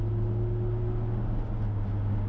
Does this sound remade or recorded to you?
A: recorded